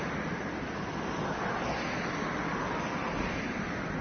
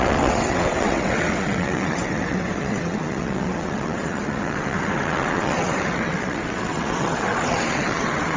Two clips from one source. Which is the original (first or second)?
first